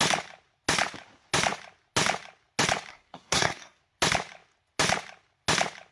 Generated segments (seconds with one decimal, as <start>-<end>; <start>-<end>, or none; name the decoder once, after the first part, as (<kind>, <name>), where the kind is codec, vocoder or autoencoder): 2.9-3.8 (codec, SNAC)